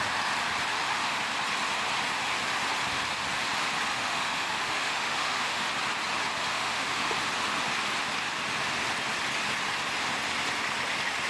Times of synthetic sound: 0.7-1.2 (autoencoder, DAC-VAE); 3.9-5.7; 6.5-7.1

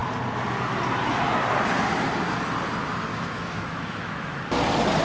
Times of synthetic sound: 3.1-4.4 (autoencoder, DAC-VAE)

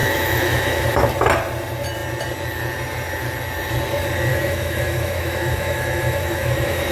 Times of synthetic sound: 0.0-1.1 (autoencoder, DAC-VAE); 4.3-6.9

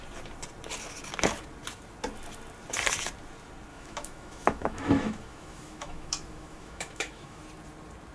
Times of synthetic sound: 3.7-7.4 (autoencoder, DAC-VAE)

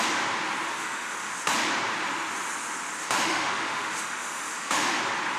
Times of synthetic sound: 0.7-1.4 (autoencoder, DAC-VAE); 3.0-5.0

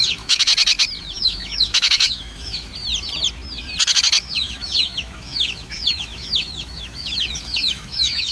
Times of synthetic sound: 0.0-0.5 (autoencoder, DAC-VAE); 1.0-2.7; 4.2-8.3